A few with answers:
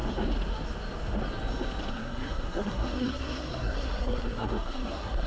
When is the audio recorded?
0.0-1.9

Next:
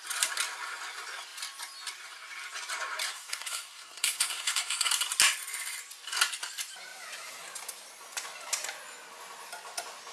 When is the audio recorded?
0.0-3.1; 4.9-10.1

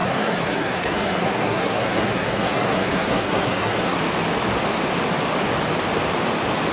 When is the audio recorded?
4.0-6.7

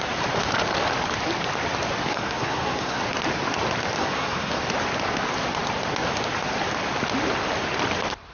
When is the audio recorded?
0.0-2.1; 3.0-4.0; 4.6-8.3